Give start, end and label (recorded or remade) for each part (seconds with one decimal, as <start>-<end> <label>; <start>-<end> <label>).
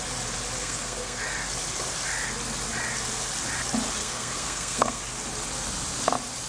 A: 0.0-0.6 recorded; 0.6-1.2 remade; 1.2-4.0 recorded; 4.0-5.0 remade; 5.0-6.5 recorded